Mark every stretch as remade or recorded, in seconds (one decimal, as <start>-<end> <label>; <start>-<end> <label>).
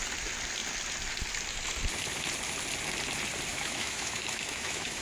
0.0-3.5 recorded; 3.5-5.0 remade